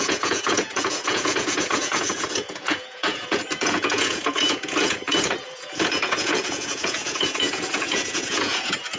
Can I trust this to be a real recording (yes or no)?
no